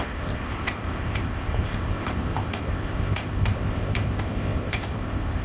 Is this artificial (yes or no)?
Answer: yes